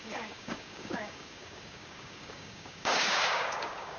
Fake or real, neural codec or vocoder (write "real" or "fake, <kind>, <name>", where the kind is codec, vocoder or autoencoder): fake, codec, DAC